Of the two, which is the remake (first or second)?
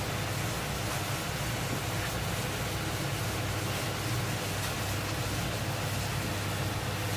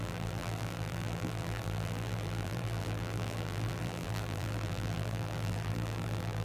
second